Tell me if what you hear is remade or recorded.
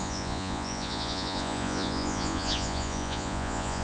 remade